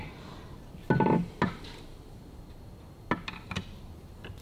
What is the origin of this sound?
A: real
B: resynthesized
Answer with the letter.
A